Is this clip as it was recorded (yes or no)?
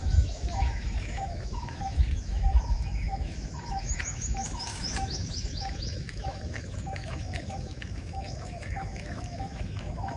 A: no